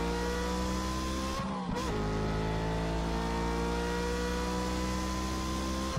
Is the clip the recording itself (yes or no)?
yes